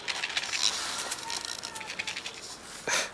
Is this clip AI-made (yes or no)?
no